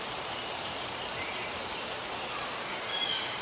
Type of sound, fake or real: fake